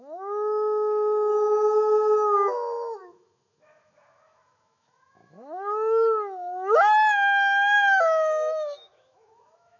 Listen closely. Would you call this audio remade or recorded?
remade